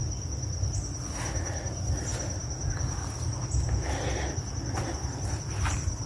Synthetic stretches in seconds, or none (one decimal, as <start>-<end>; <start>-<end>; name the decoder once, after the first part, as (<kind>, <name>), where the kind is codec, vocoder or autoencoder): none